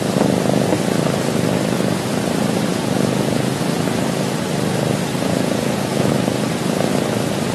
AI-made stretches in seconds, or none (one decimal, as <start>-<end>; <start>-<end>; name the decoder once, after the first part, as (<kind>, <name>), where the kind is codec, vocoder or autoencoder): 2.7-3.6 (vocoder, Vocos); 5.1-6.1